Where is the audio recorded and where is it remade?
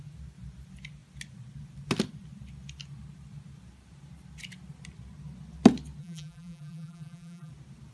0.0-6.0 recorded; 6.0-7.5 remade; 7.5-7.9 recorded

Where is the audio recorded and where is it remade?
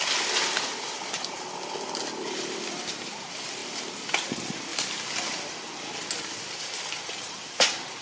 0.0-8.0 recorded